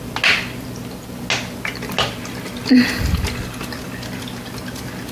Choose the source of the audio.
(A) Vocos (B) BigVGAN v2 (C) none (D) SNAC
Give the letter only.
C